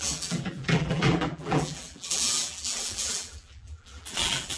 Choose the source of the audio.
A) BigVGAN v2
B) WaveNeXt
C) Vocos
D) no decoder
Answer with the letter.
A